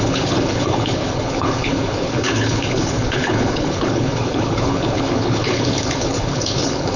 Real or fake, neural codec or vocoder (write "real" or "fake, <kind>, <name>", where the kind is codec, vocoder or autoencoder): fake, codec, HILCodec